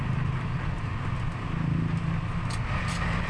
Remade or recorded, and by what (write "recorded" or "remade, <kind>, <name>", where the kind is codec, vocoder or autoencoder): recorded